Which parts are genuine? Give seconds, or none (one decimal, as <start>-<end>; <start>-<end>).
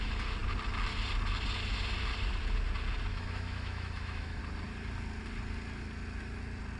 0.0-3.1; 4.4-6.8